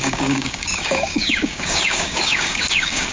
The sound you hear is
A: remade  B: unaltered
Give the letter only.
A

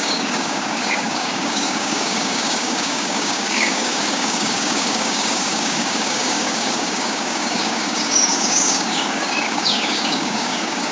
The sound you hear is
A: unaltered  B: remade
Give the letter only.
B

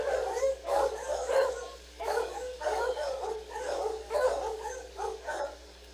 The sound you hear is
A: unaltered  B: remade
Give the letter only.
B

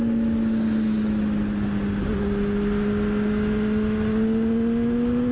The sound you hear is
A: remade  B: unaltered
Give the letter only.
B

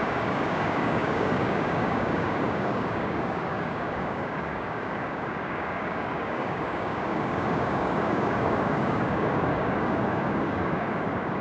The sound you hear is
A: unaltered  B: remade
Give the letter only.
B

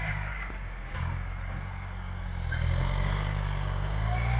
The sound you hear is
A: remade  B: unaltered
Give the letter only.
A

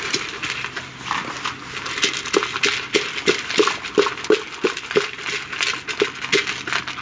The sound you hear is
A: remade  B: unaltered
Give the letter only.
B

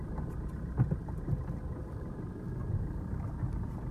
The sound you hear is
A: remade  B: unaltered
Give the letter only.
B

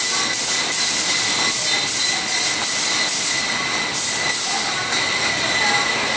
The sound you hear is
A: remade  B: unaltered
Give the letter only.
B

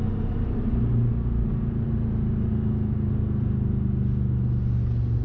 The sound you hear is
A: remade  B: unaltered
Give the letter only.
B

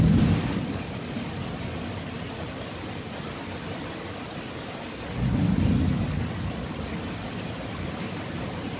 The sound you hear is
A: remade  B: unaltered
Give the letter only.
B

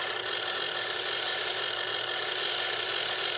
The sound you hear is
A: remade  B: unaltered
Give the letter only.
B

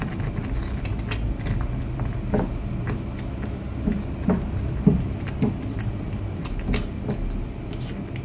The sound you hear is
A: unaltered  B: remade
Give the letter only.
A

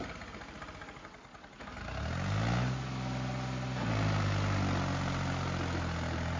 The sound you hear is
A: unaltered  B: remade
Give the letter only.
A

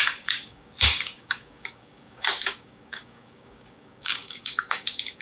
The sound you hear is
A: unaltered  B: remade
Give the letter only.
B